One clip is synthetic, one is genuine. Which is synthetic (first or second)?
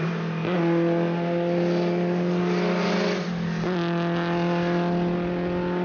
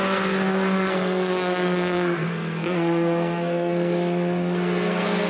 second